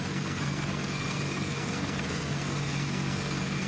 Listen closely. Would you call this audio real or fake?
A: fake